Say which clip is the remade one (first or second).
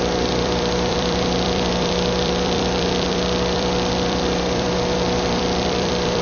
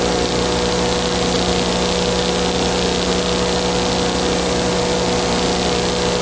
first